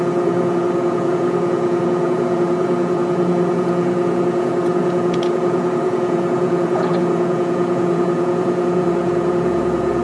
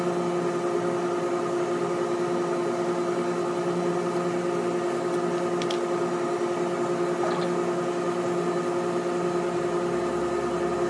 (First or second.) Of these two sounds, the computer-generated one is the first